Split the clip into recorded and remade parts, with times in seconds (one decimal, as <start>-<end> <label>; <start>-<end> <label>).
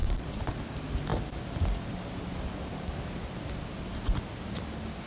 0.0-0.5 remade; 0.5-5.1 recorded